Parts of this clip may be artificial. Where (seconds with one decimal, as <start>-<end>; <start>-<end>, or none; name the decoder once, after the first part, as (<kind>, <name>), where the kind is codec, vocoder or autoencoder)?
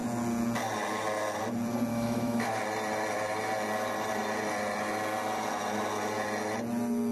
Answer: 1.9-2.6 (autoencoder, DAC-VAE)